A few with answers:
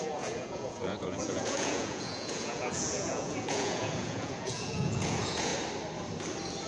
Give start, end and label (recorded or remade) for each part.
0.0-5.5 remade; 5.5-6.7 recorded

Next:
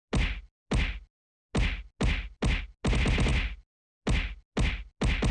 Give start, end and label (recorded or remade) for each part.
0.0-5.3 recorded

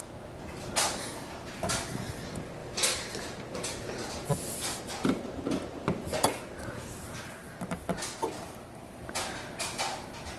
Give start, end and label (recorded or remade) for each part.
0.0-2.6 recorded; 2.6-4.1 remade; 4.1-10.4 recorded

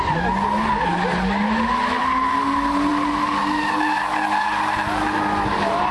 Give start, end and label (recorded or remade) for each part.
0.0-5.9 recorded